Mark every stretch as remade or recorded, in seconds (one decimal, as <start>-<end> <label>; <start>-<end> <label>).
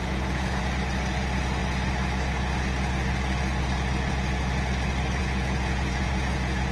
0.0-0.6 remade; 0.6-5.2 recorded; 5.2-6.7 remade